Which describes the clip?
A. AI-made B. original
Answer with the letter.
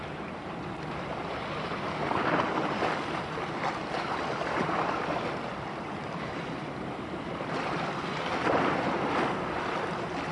A